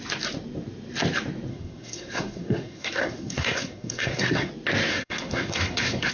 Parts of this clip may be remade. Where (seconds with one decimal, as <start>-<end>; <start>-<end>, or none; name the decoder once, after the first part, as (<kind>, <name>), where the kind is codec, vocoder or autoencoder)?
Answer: 1.5-4.5 (codec, SNAC); 4.9-6.1